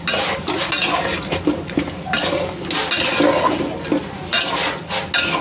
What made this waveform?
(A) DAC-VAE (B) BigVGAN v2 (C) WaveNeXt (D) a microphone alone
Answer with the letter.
D